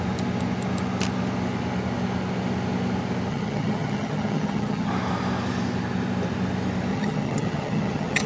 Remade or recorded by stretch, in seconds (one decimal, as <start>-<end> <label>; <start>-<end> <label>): 0.0-3.3 recorded; 3.3-4.9 remade; 4.9-6.9 recorded; 6.9-8.3 remade